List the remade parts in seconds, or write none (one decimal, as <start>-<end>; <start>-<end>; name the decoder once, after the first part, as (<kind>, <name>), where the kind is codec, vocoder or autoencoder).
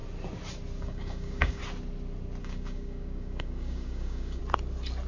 0.8-1.6 (codec, DAC); 2.4-4.4